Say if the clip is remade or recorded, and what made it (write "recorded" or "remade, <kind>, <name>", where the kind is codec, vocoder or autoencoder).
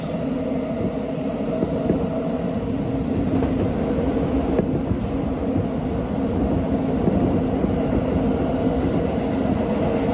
recorded